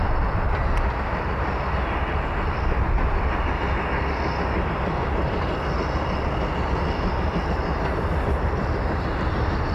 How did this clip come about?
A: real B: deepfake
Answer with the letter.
A